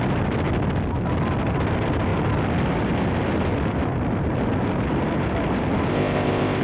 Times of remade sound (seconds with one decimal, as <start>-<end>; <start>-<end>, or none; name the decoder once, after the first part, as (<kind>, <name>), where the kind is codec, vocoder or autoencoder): 5.9-6.6 (codec, ZipCodec)